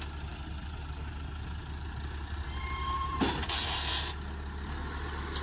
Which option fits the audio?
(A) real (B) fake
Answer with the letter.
A